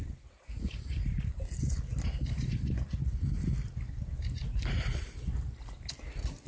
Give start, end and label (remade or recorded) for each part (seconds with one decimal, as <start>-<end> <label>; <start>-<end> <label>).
0.0-6.5 recorded